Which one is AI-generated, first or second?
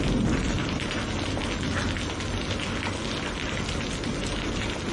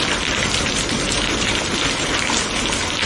second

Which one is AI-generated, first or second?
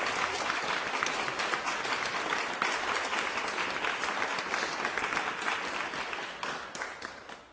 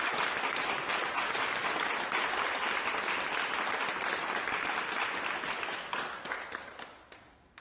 second